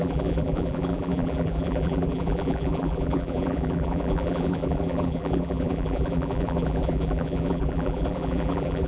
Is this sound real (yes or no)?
no